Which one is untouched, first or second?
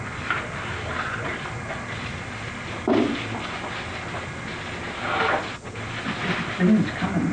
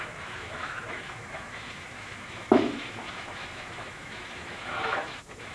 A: first